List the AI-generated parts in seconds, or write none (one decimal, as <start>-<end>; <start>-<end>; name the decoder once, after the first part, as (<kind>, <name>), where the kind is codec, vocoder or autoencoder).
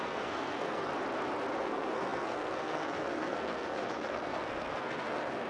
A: 0.0-0.9 (codec, SNAC); 1.6-5.5